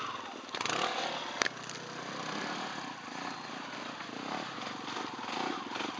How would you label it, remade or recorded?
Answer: recorded